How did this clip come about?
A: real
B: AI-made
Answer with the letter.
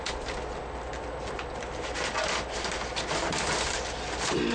A